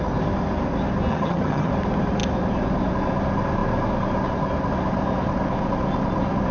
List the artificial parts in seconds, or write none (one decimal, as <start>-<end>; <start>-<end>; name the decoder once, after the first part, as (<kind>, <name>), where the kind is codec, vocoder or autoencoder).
1.1-1.7 (vocoder, HiFi-GAN)